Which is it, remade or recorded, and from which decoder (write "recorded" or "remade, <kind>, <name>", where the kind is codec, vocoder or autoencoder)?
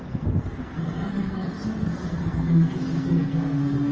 remade, codec, SNAC